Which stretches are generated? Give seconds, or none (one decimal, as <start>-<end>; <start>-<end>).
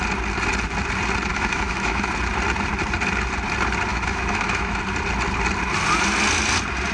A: 1.3-2.1; 3.9-4.8